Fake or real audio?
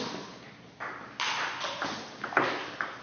real